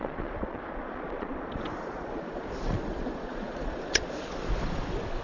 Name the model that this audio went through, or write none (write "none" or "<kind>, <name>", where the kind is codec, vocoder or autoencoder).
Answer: vocoder, Vocos